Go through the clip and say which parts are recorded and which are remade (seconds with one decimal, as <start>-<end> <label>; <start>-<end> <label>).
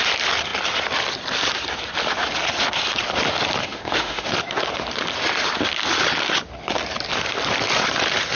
0.0-3.6 recorded; 3.6-4.3 remade; 4.3-8.4 recorded